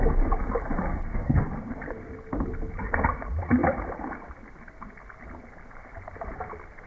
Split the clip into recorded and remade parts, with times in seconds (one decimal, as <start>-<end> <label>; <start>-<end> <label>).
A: 0.0-0.9 recorded; 0.9-1.4 remade; 1.4-6.9 recorded